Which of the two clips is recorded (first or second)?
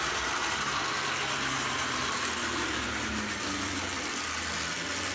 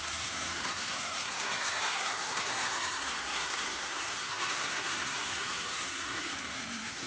first